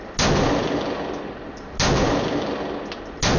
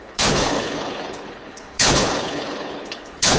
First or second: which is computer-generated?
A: second